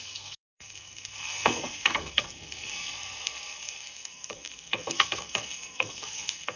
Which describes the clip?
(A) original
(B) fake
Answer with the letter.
B